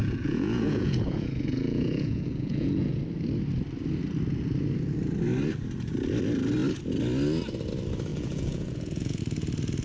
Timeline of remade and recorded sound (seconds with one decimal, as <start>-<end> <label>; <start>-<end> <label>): 0.0-3.0 remade; 3.0-8.1 recorded; 8.1-9.2 remade; 9.2-9.8 recorded

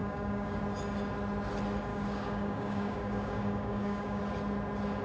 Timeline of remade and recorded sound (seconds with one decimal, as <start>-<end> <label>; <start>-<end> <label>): 0.0-0.6 remade; 0.6-1.9 recorded; 1.9-4.2 remade; 4.2-5.0 recorded

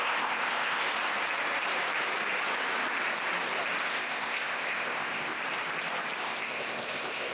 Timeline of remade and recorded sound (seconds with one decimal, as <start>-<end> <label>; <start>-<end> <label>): 0.0-0.9 remade; 0.9-3.9 recorded; 3.9-5.4 remade; 5.4-6.2 recorded; 6.2-7.3 remade

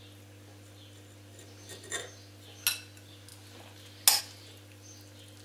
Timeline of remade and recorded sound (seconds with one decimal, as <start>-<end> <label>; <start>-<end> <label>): 0.0-5.4 recorded

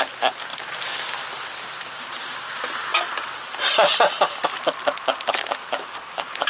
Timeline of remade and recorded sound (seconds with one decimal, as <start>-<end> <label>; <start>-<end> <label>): 0.0-6.5 recorded

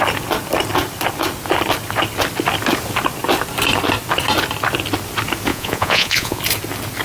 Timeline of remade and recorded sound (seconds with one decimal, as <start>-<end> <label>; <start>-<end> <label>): 0.0-5.5 recorded; 5.5-6.4 remade; 6.4-7.0 recorded